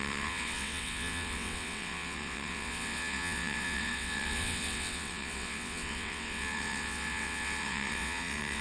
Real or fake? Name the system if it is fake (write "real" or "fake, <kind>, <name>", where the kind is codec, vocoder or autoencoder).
fake, vocoder, WaveNeXt